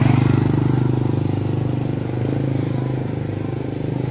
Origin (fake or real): real